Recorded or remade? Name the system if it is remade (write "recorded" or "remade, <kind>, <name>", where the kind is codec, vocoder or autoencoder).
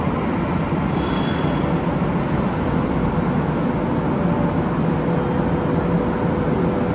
recorded